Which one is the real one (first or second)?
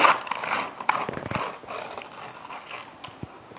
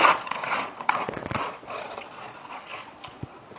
first